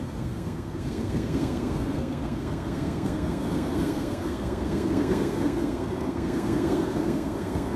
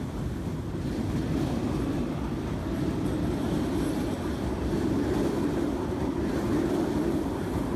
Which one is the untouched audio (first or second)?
second